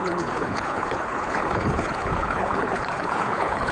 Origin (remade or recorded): remade